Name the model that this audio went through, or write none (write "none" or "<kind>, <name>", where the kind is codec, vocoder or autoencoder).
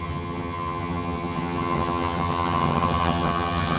vocoder, HiFi-GAN